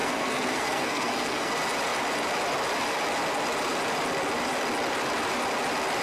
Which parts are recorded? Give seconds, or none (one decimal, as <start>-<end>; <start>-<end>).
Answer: 1.5-6.0